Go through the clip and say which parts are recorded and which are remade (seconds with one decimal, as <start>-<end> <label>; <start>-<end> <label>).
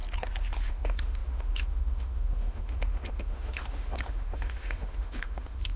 0.0-0.7 recorded; 0.7-5.8 remade